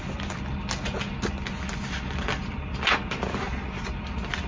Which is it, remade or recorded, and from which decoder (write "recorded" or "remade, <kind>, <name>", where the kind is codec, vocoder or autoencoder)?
recorded